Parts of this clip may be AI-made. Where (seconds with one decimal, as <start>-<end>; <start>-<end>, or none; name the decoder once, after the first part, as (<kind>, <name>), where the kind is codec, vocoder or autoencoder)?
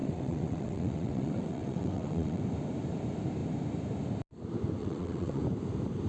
0.0-2.4 (vocoder, WaveNeXt); 4.8-5.4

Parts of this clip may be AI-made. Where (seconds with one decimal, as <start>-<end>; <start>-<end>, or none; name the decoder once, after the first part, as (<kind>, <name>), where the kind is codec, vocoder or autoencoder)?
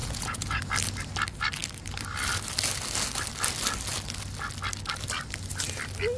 0.0-0.6 (vocoder, Vocos)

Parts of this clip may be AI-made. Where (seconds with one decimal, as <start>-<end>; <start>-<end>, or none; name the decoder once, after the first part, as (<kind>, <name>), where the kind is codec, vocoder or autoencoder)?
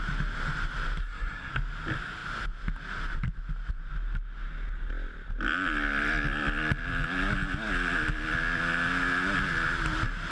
1.0-1.5 (codec, SNAC)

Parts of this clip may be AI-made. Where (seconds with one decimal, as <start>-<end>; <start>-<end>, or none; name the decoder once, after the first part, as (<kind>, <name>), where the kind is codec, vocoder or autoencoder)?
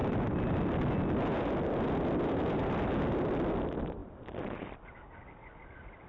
none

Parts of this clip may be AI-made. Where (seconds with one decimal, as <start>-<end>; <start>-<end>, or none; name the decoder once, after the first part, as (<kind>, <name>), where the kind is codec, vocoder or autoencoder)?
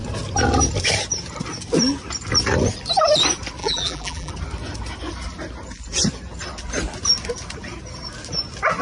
3.6-4.3 (vocoder, BigVGAN v2)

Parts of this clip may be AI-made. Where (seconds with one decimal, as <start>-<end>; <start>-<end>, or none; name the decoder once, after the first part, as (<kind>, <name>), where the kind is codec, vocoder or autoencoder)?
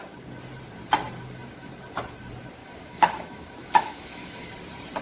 2.6-4.5 (autoencoder, DAC-VAE)